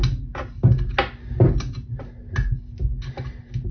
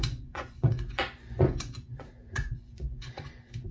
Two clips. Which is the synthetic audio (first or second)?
second